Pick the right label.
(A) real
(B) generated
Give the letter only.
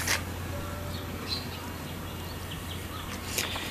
A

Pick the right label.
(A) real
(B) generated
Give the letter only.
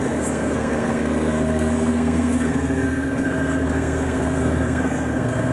B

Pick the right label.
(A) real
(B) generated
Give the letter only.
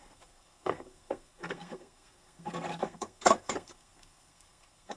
B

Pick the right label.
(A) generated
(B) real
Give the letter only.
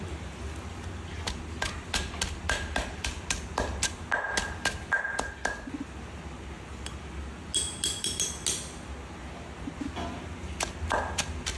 B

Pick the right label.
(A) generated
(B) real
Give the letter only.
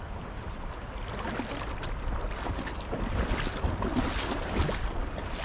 B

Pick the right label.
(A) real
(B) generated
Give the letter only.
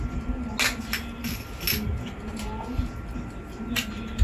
A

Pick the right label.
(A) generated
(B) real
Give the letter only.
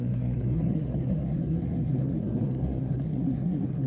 A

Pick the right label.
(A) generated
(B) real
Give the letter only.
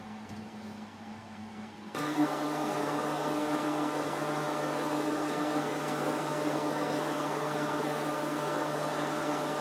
A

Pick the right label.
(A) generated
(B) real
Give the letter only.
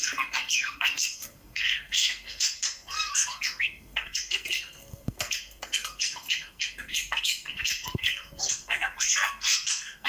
A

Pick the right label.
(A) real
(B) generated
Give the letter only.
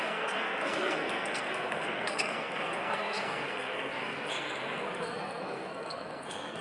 B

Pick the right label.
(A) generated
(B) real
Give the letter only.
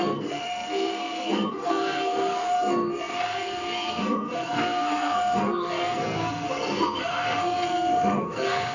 A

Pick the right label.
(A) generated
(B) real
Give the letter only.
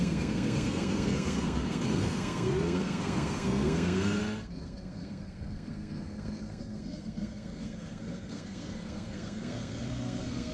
A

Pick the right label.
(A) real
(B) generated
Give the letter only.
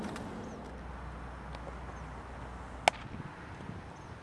A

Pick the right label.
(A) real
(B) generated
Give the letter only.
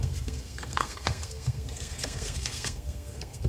B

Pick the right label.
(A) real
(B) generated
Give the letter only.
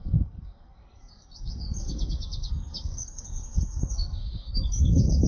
B